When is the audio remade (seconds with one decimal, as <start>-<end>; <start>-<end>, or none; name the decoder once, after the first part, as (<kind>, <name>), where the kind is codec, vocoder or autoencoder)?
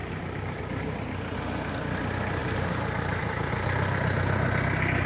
0.0-0.6 (vocoder, BigVGAN v2); 2.4-3.5